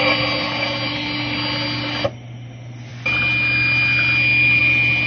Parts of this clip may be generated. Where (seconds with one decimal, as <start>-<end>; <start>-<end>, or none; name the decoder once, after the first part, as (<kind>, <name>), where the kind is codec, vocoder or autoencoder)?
none